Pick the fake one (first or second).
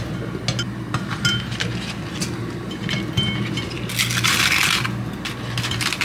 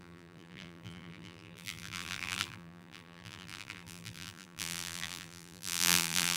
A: second